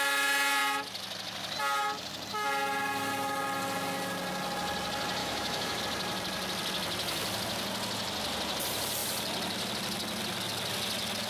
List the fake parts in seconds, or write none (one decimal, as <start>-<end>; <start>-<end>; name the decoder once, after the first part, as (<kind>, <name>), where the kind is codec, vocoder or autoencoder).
5.2-5.8 (autoencoder, DAC-VAE)